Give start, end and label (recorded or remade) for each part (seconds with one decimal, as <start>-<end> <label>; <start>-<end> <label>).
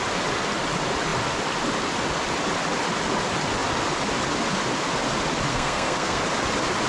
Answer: 0.0-5.5 recorded; 5.5-6.2 remade; 6.2-6.9 recorded